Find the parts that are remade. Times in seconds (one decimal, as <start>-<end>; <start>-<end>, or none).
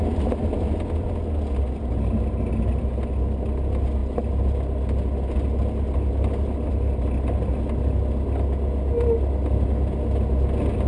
none